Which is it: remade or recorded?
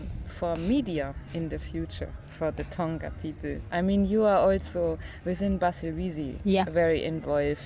recorded